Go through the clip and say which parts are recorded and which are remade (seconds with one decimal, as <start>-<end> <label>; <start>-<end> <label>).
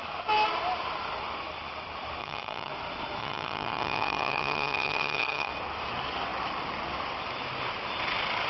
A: 0.0-2.2 recorded; 2.2-2.7 remade; 2.7-3.2 recorded; 3.2-5.5 remade; 5.5-8.5 recorded